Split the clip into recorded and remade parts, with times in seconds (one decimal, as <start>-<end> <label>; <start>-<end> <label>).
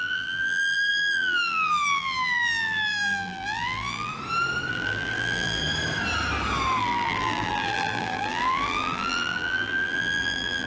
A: 0.0-4.1 remade; 4.1-4.7 recorded; 4.7-5.6 remade; 5.6-6.8 recorded; 6.8-10.7 remade